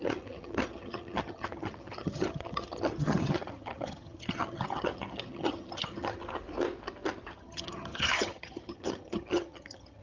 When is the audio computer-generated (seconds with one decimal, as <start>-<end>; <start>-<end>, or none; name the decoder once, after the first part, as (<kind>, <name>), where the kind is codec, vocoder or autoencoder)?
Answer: 0.0-6.2 (vocoder, HiFi-GAN); 7.3-10.0